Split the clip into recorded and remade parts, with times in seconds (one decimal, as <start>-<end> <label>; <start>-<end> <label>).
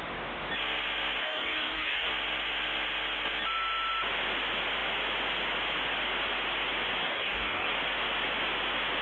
0.0-1.2 recorded; 1.2-2.1 remade; 2.1-7.0 recorded; 7.0-7.7 remade; 7.7-9.0 recorded